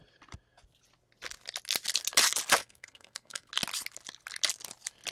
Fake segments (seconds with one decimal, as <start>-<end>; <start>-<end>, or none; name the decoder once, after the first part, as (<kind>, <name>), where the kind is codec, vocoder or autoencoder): 2.6-3.5 (codec, SNAC)